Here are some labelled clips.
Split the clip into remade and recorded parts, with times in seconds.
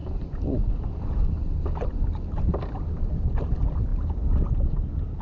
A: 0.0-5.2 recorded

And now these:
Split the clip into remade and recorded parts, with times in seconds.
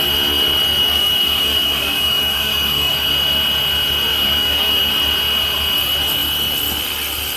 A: 0.0-0.8 recorded; 0.8-3.1 remade; 3.1-4.1 recorded; 4.1-4.9 remade; 4.9-7.4 recorded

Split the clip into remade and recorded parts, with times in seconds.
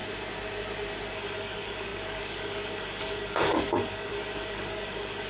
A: 0.0-1.1 recorded; 1.1-5.3 remade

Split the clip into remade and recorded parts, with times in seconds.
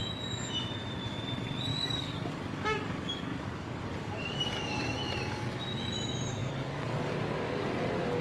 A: 0.0-1.7 recorded; 1.7-4.4 remade; 4.4-6.4 recorded; 6.4-7.1 remade; 7.1-8.2 recorded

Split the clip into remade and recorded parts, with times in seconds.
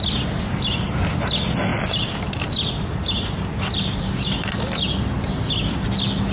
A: 0.0-6.3 recorded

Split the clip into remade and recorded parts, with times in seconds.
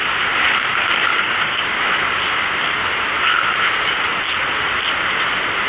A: 0.0-1.1 recorded; 1.1-1.7 remade; 1.7-5.7 recorded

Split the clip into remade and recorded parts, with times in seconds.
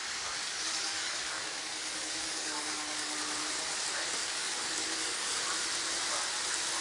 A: 0.0-3.2 remade; 3.2-4.2 recorded; 4.2-5.4 remade; 5.4-6.8 recorded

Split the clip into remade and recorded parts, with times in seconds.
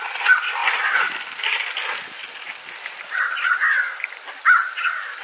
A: 0.0-5.2 recorded